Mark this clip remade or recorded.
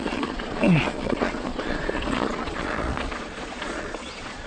remade